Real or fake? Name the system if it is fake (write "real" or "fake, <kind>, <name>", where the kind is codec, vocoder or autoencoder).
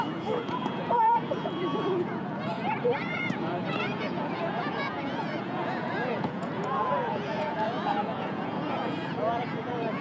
fake, vocoder, Vocos